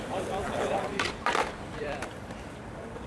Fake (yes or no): yes